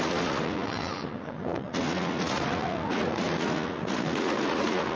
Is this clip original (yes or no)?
no